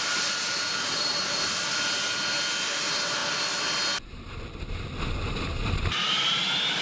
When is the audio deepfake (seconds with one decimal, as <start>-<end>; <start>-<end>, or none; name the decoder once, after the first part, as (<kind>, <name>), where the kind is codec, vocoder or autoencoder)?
none